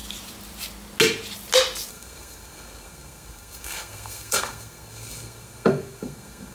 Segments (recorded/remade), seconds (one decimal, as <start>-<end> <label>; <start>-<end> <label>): 0.0-1.9 recorded; 1.9-6.5 remade